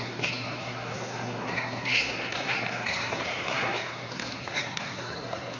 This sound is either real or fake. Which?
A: fake